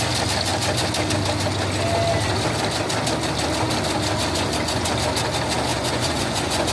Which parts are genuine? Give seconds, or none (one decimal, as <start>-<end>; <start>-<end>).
0.0-4.3; 4.9-5.7